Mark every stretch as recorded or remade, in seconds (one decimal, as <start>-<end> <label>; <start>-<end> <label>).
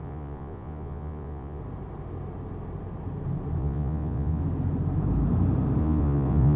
0.0-1.6 remade; 1.6-3.6 recorded; 3.6-4.4 remade; 4.4-5.8 recorded; 5.8-6.6 remade